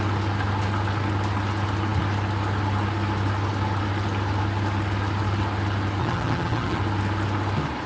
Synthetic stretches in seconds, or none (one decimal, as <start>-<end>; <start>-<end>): 6.0-6.8